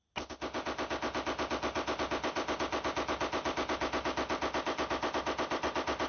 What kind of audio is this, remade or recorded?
recorded